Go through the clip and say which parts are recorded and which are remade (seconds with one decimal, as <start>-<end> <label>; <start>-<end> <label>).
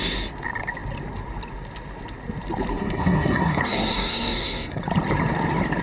0.0-2.7 recorded; 2.7-4.8 remade; 4.8-5.8 recorded